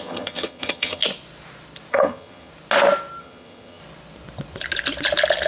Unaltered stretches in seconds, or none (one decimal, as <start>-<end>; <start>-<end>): 1.0-1.9; 2.5-3.2; 3.8-5.5